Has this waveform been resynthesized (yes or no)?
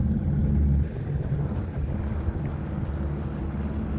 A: no